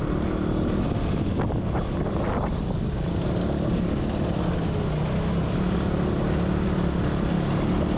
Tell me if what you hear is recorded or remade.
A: recorded